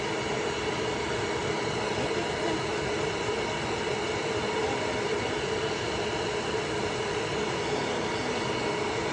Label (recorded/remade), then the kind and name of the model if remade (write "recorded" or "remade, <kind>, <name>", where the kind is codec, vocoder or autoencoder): recorded